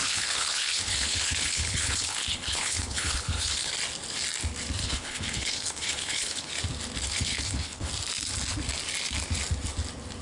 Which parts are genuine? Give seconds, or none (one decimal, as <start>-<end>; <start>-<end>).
3.7-4.8; 6.5-7.0; 7.9-10.2

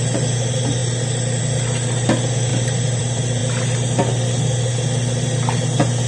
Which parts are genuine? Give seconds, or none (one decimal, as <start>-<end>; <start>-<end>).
0.0-6.1